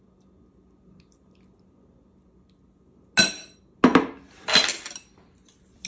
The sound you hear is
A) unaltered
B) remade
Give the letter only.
A